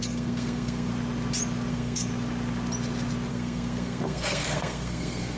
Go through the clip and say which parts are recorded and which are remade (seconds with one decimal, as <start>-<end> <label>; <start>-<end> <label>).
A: 0.0-0.9 remade; 0.9-1.7 recorded; 1.7-2.1 remade; 2.1-3.3 recorded; 3.3-5.4 remade